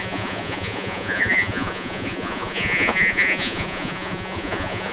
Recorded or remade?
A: remade